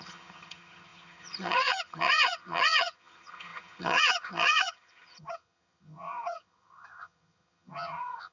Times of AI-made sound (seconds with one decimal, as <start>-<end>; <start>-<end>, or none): 0.0-8.3